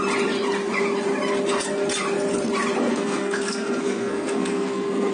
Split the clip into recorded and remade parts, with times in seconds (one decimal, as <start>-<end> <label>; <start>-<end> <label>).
0.0-2.9 recorded; 2.9-5.1 remade